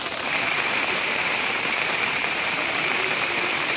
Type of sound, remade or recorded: remade